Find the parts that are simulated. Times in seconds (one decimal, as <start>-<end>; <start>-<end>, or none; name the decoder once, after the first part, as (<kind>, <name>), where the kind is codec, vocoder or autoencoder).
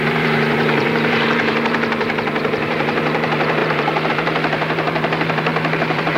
0.0-6.2 (vocoder, BigVGAN v2)